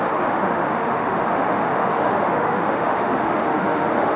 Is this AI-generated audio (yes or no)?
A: yes